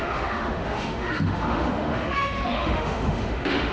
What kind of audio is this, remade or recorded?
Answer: remade